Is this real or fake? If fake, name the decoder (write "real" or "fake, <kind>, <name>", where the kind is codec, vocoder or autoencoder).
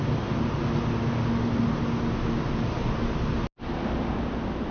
real